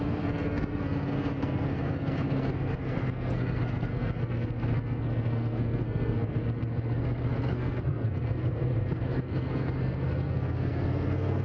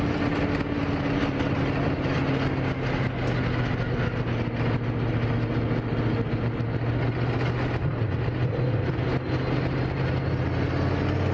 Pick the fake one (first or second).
first